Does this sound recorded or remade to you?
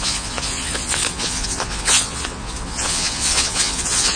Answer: remade